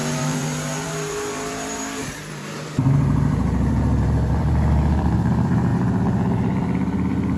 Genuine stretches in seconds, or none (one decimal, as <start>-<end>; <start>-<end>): none